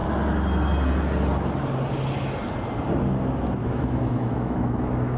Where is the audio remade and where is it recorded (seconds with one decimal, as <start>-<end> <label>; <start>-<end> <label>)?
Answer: 0.0-3.6 recorded; 3.6-5.2 remade